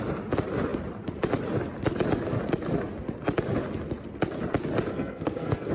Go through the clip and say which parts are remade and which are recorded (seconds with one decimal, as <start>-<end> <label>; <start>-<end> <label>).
0.0-4.9 recorded; 4.9-5.7 remade